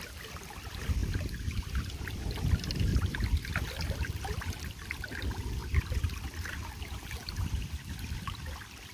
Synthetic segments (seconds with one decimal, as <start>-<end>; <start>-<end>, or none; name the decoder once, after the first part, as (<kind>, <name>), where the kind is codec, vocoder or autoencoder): 1.0-2.5 (vocoder, BigVGAN v2); 2.9-4.4; 5.6-6.8; 7.2-8.4